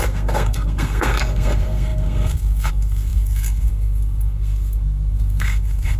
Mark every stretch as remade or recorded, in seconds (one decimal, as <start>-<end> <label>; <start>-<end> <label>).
0.0-6.0 remade